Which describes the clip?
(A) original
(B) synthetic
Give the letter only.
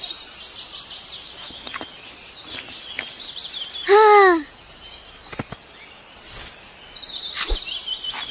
A